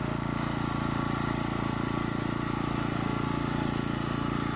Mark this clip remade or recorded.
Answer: recorded